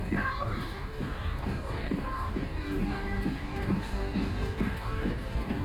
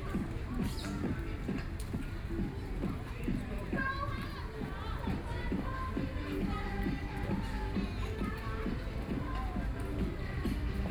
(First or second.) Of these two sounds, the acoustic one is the second